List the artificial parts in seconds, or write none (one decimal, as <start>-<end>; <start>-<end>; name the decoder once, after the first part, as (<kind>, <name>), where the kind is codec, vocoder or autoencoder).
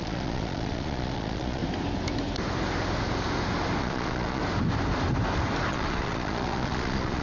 0.0-1.6 (vocoder, Vocos); 3.8-4.4; 5.7-7.2